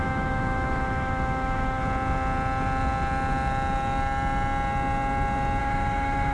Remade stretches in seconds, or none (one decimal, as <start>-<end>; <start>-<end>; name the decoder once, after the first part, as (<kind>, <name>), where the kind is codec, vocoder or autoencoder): 0.0-1.8 (autoencoder, DAC-VAE); 5.6-6.3